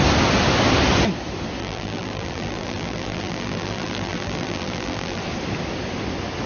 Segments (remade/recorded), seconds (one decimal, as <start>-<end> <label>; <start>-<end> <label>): 0.0-1.6 recorded; 1.6-5.2 remade; 5.2-6.5 recorded